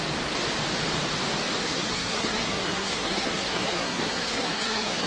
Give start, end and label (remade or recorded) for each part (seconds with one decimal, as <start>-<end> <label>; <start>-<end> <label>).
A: 0.0-1.6 recorded; 1.6-5.1 remade

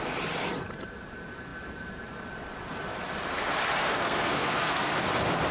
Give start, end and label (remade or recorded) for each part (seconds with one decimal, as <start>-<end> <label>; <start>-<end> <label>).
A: 0.0-3.8 recorded; 3.8-4.9 remade; 4.9-5.5 recorded

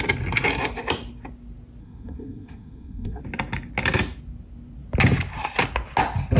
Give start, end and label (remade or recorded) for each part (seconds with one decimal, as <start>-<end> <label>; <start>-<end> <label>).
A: 0.0-1.8 recorded; 1.8-3.2 remade; 3.2-6.4 recorded

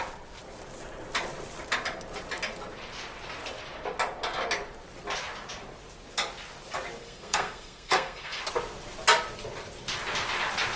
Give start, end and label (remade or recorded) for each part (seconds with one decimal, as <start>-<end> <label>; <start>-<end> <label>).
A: 0.0-7.0 recorded; 7.0-8.4 remade; 8.4-10.8 recorded

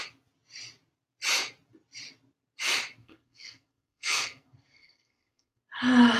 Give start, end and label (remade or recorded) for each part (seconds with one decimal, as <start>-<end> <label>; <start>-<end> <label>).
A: 0.0-3.0 recorded; 3.0-5.6 remade; 5.6-6.2 recorded

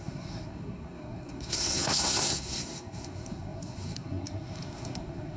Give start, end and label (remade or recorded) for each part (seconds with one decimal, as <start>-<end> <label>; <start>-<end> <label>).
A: 0.0-5.4 remade

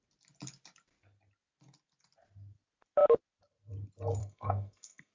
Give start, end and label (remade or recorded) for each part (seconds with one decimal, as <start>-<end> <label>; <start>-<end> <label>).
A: 0.0-4.2 recorded; 4.2-5.1 remade